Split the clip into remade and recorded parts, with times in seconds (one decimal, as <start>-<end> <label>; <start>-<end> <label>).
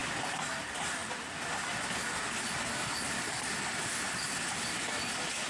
0.0-5.5 recorded